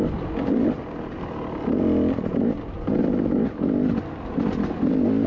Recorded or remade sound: recorded